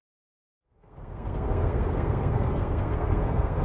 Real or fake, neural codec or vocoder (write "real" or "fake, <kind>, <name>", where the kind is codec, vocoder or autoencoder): fake, codec, SNAC